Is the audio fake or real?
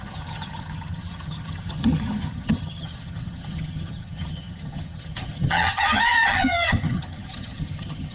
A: fake